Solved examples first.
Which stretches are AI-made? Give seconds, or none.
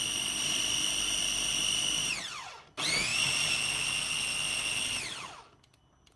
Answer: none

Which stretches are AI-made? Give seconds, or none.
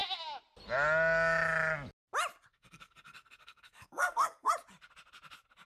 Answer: 2.5-4.5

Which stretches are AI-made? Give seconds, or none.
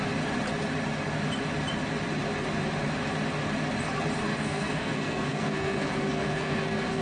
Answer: 4.3-7.0